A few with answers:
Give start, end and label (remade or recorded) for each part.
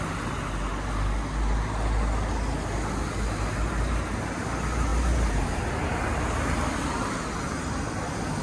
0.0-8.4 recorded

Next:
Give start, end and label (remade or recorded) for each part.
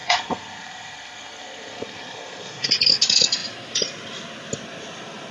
0.0-2.7 remade; 2.7-5.3 recorded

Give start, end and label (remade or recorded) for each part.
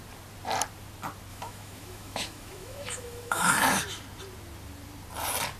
0.0-1.3 recorded; 1.3-3.5 remade; 3.5-5.6 recorded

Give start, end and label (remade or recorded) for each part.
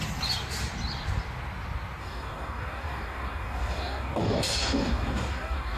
0.0-2.0 recorded; 2.0-5.8 remade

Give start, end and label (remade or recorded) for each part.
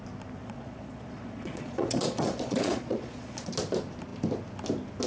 0.0-0.4 recorded; 0.4-3.5 remade; 3.5-5.1 recorded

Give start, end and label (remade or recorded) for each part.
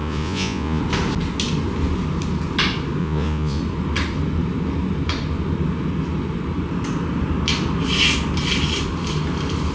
0.0-0.8 remade; 0.8-3.0 recorded; 3.0-3.6 remade; 3.6-9.7 recorded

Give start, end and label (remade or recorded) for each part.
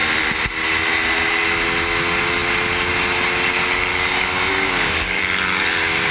0.0-3.9 recorded; 3.9-5.2 remade; 5.2-6.1 recorded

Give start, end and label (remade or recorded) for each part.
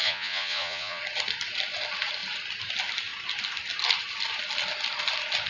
0.0-1.0 remade; 1.0-5.5 recorded